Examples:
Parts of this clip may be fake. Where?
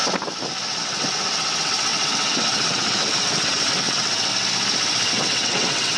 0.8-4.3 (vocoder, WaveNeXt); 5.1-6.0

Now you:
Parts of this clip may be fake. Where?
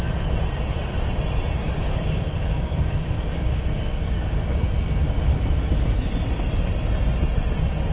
1.6-4.6 (codec, DAC)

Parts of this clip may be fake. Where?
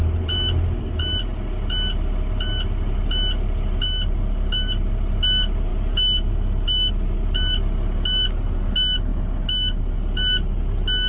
none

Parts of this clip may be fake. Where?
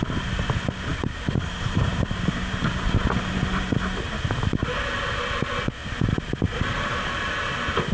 0.9-2.6 (vocoder, BigVGAN v2); 5.8-7.3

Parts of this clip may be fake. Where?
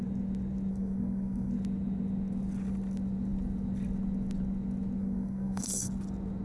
0.7-1.5 (codec, SNAC); 5.0-5.9